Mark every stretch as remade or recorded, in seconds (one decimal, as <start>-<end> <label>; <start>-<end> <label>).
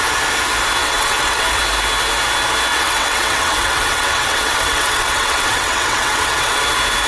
0.0-0.8 recorded; 0.8-1.6 remade; 1.6-2.7 recorded; 2.7-6.6 remade; 6.6-7.1 recorded